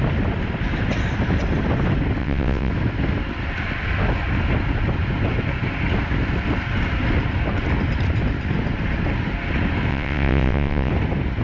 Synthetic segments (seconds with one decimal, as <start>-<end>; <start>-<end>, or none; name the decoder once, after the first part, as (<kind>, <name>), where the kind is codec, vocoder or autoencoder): 2.2-2.7 (vocoder, WaveNeXt); 9.9-10.9